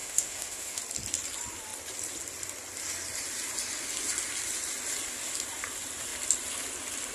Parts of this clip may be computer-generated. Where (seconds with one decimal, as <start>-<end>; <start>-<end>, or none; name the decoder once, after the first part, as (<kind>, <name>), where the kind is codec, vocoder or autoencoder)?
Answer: 0.0-0.8 (autoencoder, DAC-VAE)